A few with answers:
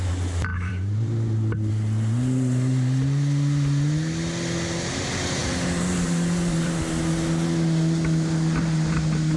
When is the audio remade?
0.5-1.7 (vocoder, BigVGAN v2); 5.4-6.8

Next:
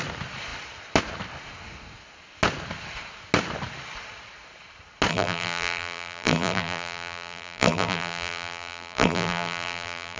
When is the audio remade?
5.1-10.2 (vocoder, BigVGAN v2)

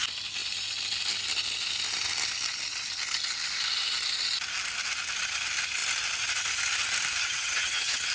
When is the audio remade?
7.2-8.1 (vocoder, HiFi-GAN)

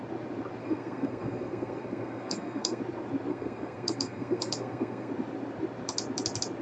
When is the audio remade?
0.6-2.8 (codec, SNAC); 3.3-5.1